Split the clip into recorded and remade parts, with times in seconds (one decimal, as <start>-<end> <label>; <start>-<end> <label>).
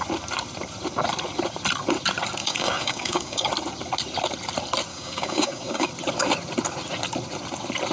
0.0-2.4 recorded; 2.4-3.5 remade; 3.5-4.9 recorded; 4.9-5.9 remade; 5.9-7.9 recorded